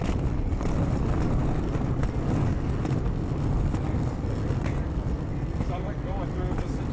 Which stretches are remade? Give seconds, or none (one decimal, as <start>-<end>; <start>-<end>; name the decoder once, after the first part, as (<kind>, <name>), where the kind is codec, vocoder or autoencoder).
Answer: none